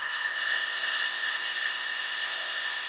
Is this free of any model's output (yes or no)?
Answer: no